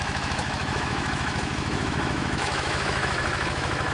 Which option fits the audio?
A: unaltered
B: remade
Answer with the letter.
B